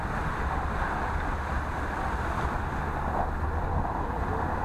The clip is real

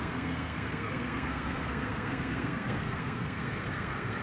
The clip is fake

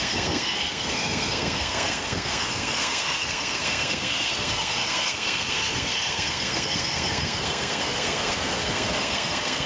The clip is fake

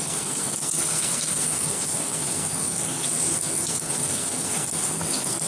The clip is fake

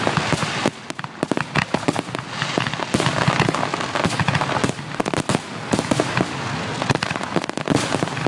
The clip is real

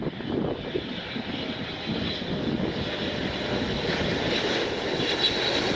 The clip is real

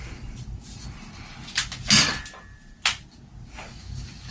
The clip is real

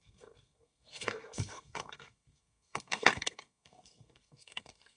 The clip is fake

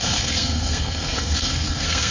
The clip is fake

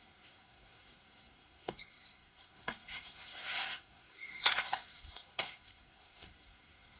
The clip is fake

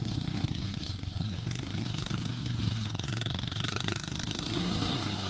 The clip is fake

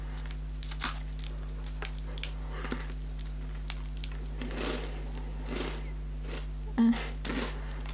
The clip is real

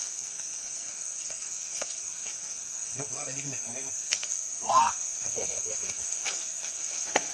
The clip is fake